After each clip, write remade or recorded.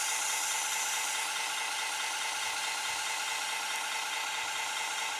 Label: recorded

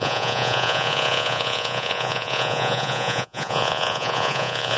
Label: remade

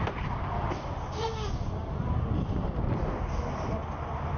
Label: recorded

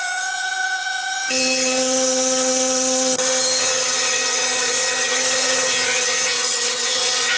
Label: remade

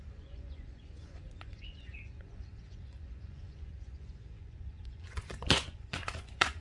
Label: remade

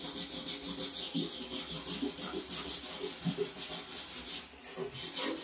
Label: recorded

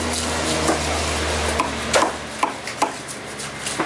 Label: recorded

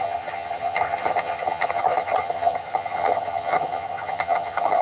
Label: remade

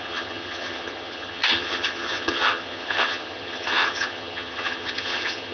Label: remade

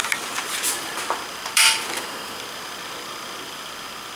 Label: recorded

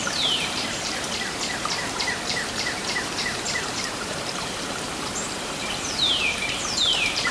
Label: remade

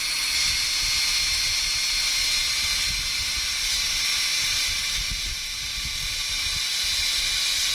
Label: recorded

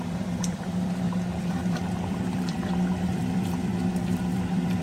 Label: remade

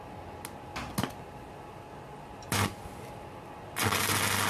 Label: recorded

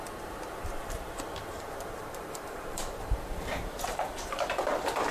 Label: remade